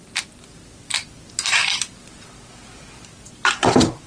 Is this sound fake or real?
real